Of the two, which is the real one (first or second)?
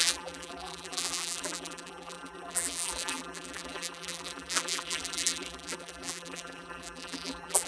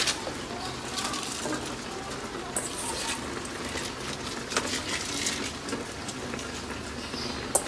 second